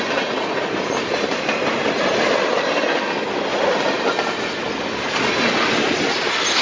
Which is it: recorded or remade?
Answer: recorded